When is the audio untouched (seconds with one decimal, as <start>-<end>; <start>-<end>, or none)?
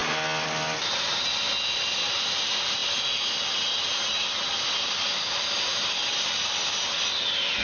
0.0-7.6